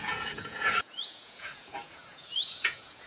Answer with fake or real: fake